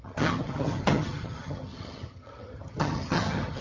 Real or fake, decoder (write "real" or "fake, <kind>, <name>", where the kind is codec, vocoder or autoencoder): fake, vocoder, HiFi-GAN